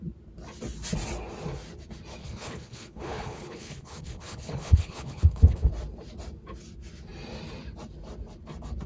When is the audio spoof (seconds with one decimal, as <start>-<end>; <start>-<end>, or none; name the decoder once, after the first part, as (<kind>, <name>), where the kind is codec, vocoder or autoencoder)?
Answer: 2.2-5.7 (codec, HILCodec)